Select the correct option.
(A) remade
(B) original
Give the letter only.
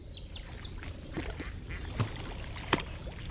B